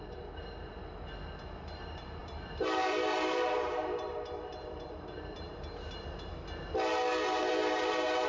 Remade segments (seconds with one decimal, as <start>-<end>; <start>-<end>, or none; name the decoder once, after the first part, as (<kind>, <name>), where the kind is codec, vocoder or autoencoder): 0.0-0.8 (vocoder, BigVGAN v2); 1.6-6.3; 7.4-8.3